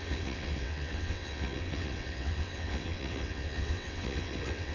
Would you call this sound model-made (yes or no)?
yes